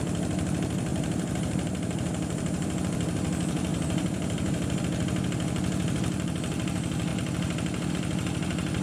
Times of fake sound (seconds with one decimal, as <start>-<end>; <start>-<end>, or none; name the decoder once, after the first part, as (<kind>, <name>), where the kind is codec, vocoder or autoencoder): 0.9-2.8 (vocoder, BigVGAN v2); 3.7-4.8